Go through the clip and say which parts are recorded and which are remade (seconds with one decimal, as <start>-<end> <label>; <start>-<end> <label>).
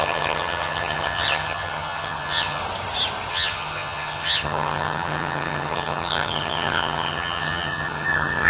0.0-2.6 remade; 2.6-3.3 recorded; 3.3-8.5 remade